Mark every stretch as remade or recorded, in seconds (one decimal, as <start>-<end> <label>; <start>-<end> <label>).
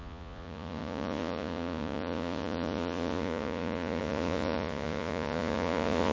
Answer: 0.0-6.1 remade